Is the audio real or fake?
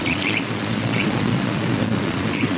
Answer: fake